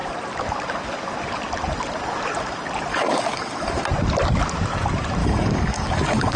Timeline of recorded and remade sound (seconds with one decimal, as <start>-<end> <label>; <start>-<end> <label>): 0.0-2.9 recorded; 2.9-3.8 remade; 3.8-5.2 recorded; 5.2-6.4 remade